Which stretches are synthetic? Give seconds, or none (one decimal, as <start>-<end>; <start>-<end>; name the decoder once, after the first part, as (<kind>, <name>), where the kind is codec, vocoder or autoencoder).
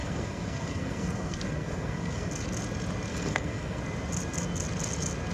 0.0-2.3 (codec, SNAC); 3.1-3.8